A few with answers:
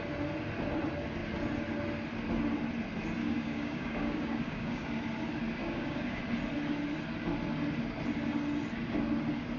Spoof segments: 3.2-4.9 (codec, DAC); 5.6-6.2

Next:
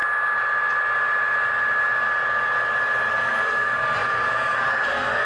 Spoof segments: 3.1-5.2 (codec, SNAC)

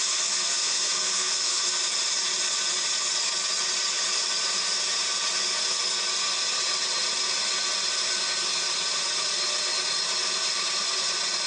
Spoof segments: 0.0-1.6 (codec, SNAC)